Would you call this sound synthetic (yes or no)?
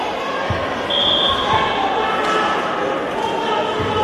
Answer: no